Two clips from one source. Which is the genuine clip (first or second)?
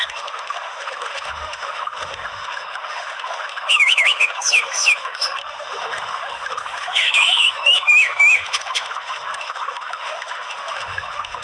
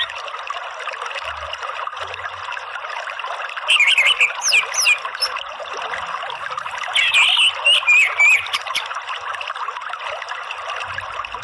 second